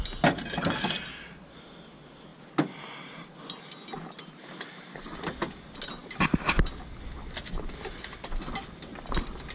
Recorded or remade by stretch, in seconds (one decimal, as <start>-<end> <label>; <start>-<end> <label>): 0.0-9.5 recorded